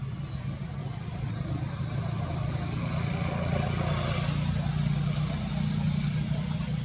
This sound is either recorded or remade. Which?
recorded